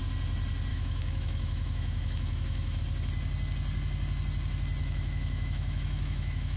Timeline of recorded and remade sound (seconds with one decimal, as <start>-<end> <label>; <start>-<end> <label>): 0.0-0.7 recorded; 0.7-2.8 remade; 2.8-4.8 recorded; 4.8-6.6 remade